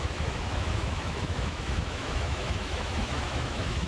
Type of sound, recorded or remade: remade